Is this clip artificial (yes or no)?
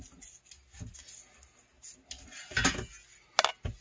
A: no